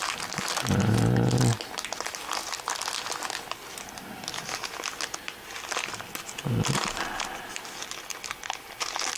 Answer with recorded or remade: recorded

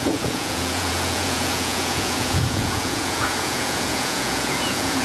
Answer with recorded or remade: remade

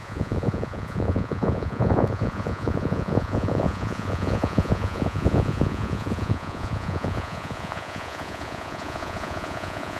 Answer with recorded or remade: remade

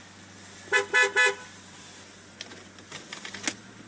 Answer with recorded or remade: recorded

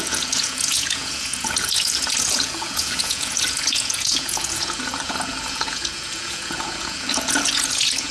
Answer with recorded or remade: remade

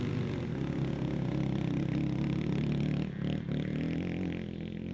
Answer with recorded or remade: recorded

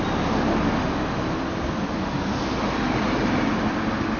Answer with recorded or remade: recorded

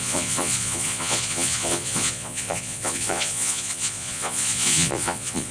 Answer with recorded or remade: remade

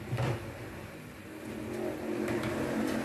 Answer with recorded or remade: recorded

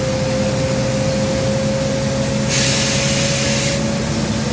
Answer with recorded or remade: recorded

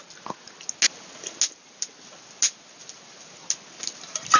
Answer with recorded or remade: recorded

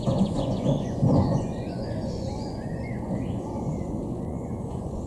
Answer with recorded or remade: remade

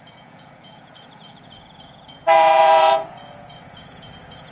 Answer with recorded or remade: remade